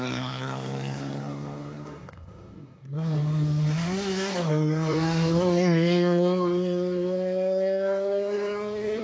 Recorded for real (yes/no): no